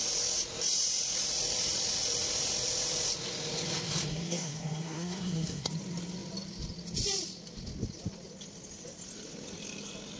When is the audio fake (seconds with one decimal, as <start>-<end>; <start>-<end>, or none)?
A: 4.1-5.7